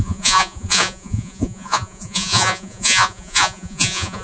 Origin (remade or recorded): remade